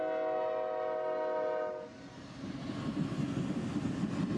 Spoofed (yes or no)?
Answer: no